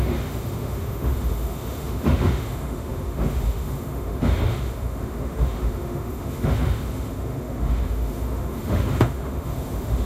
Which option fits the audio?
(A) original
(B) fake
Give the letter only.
B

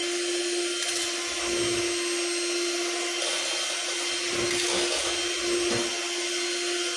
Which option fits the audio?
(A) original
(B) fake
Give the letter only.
A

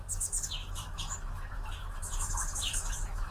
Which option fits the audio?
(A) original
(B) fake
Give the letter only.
B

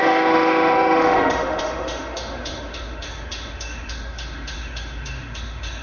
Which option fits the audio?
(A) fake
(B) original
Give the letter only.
A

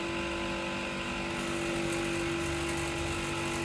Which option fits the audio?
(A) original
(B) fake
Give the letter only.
A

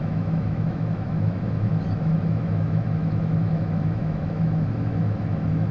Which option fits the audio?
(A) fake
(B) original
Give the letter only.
A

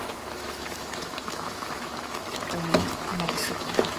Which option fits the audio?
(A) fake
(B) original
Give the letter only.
A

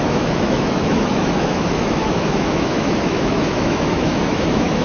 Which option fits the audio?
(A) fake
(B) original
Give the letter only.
A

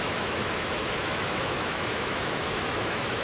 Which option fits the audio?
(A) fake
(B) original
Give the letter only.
A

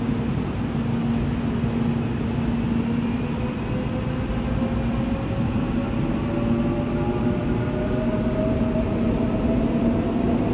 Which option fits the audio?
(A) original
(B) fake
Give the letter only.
A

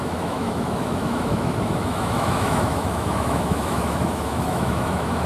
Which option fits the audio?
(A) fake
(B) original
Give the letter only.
A